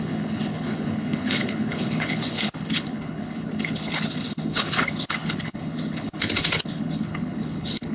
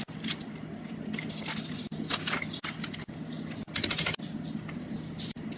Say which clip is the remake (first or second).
first